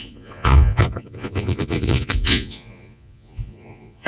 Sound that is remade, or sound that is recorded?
remade